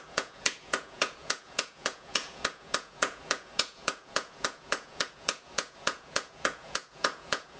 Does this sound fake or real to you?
fake